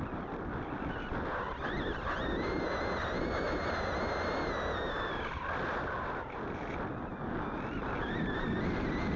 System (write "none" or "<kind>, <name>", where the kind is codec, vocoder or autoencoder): none